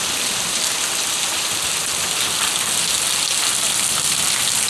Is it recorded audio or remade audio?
recorded